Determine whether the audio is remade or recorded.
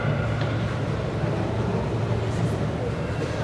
recorded